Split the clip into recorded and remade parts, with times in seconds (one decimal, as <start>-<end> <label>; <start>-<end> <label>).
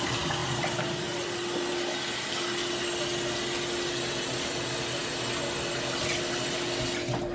0.0-0.4 recorded; 0.4-1.7 remade; 1.7-7.3 recorded